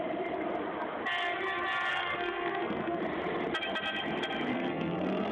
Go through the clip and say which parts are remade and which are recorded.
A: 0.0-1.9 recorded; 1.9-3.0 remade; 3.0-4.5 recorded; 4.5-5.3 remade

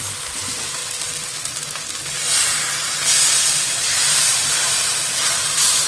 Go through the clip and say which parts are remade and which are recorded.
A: 0.0-0.8 remade; 0.8-3.5 recorded; 3.5-5.9 remade

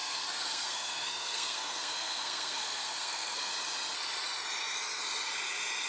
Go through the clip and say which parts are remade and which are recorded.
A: 0.0-3.5 remade; 3.5-5.9 recorded

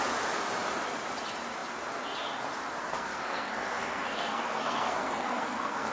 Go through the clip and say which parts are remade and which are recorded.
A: 0.0-2.8 recorded; 2.8-5.9 remade

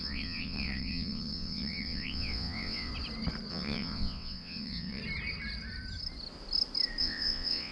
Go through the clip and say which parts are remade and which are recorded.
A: 0.0-2.9 remade; 2.9-3.5 recorded; 3.5-5.0 remade; 5.0-7.0 recorded; 7.0-7.7 remade

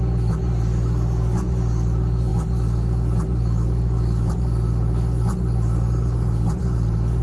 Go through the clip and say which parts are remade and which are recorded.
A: 0.0-7.2 recorded